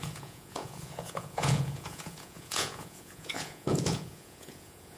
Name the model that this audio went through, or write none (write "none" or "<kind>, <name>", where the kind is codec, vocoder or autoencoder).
vocoder, Vocos